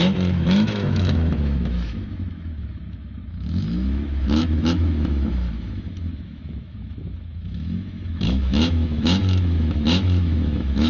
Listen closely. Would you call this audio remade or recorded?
remade